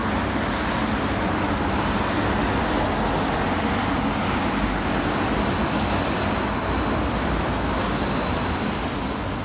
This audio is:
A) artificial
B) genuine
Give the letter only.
B